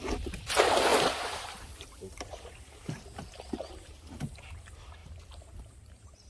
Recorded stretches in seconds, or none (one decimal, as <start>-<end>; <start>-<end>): 0.0-0.9; 3.0-5.0